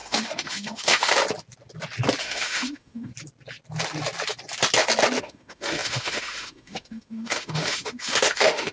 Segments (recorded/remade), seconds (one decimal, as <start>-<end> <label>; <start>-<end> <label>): 0.0-1.2 remade; 1.2-2.2 recorded; 2.2-3.1 remade; 3.1-5.2 recorded; 5.2-8.7 remade